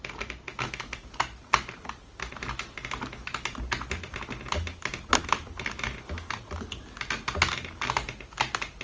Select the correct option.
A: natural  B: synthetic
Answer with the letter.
A